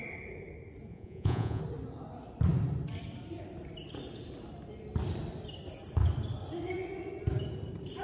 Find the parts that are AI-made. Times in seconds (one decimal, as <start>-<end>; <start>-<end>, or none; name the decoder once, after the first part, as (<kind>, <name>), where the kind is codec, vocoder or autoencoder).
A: 0.9-1.6 (vocoder, Vocos)